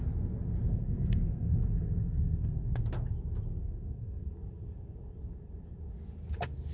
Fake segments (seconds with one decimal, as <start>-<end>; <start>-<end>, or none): 0.7-2.6; 3.6-4.3